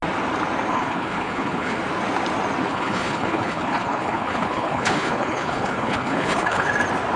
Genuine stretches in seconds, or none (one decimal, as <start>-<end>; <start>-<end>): 0.0-0.7; 1.8-2.7; 6.7-7.2